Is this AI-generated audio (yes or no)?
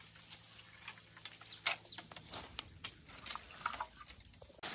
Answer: no